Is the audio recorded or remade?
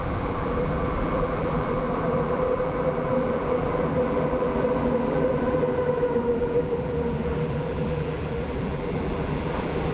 remade